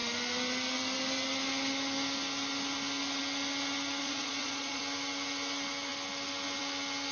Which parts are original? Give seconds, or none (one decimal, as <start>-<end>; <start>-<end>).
0.0-4.0; 4.8-7.1